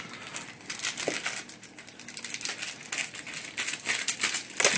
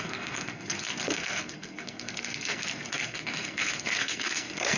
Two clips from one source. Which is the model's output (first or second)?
second